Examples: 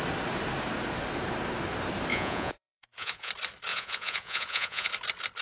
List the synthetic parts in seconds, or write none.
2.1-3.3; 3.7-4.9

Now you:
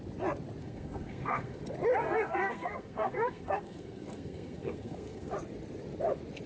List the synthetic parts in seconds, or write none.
0.6-1.6; 2.0-5.3

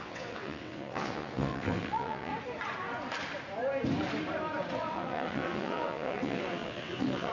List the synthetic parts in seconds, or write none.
0.0-2.3; 4.7-7.3

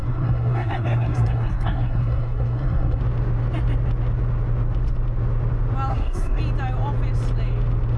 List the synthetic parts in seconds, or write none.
0.0-3.0; 5.9-6.4

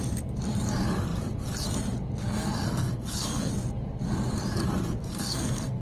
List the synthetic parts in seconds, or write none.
2.2-3.5; 5.1-5.8